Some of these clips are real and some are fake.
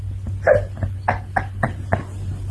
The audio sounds real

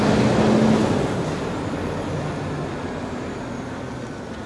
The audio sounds real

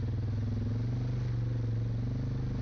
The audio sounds real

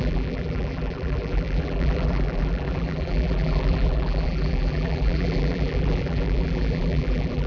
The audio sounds fake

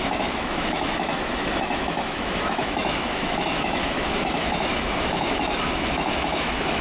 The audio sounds fake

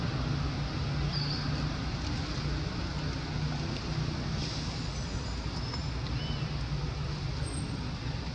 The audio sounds real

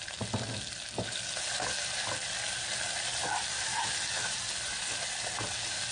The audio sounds real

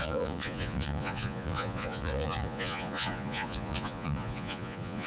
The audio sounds fake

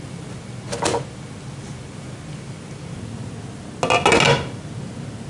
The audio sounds real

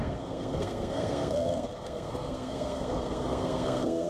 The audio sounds fake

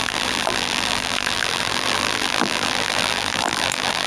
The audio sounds fake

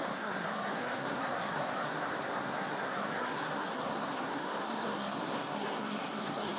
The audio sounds fake